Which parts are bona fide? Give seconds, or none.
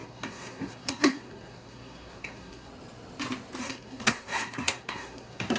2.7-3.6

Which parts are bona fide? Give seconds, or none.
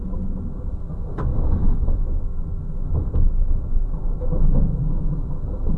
0.0-1.3; 4.8-5.8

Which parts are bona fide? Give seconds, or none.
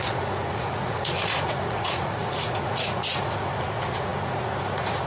none